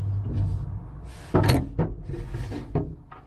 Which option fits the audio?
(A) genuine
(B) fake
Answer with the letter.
A